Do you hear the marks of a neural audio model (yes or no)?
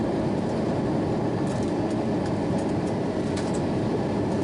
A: no